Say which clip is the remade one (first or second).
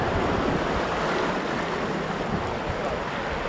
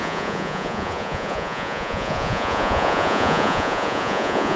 second